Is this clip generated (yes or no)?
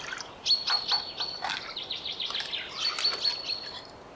no